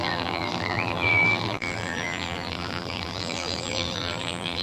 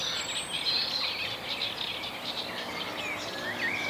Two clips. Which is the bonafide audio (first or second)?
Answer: second